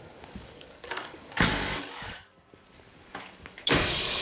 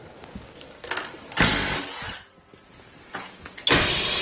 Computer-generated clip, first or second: first